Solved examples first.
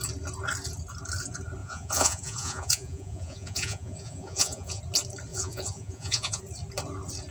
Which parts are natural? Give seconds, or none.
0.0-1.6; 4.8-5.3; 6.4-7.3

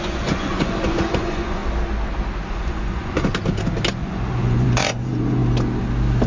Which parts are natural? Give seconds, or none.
1.6-2.5; 3.3-3.9; 5.4-6.3

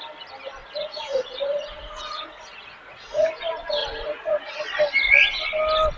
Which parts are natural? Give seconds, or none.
0.0-0.6; 3.3-3.8; 4.6-6.0

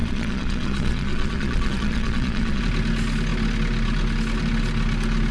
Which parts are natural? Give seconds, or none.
2.6-5.3

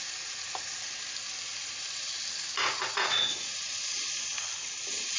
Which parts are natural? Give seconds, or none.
0.0-2.6; 3.9-5.2

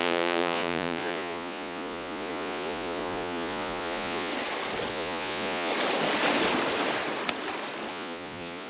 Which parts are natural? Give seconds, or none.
4.3-4.9; 5.7-7.9

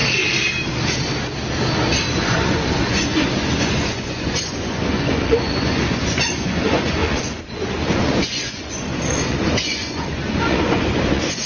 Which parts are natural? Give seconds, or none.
0.0-2.2

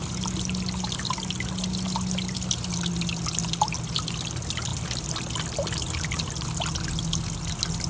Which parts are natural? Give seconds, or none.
0.0-7.9